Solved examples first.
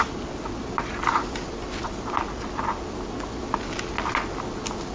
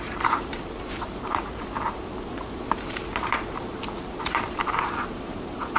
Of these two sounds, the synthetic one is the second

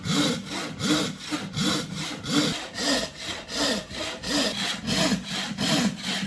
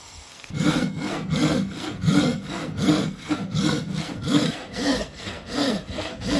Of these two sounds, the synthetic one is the second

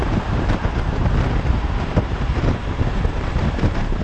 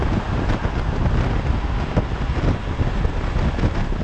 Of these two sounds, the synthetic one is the first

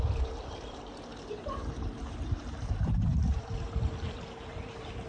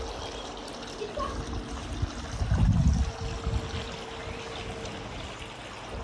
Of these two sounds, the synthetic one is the first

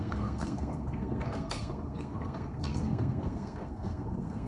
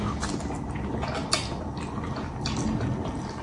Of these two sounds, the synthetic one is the first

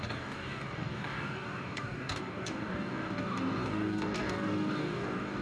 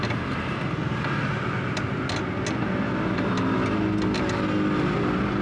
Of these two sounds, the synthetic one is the first